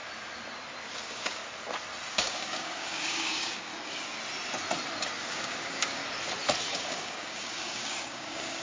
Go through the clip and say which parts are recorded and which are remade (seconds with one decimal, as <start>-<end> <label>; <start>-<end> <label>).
0.0-0.9 recorded; 0.9-1.4 remade; 1.4-2.1 recorded; 2.1-3.7 remade; 3.7-5.2 recorded; 5.2-6.0 remade; 6.0-6.7 recorded; 6.7-8.6 remade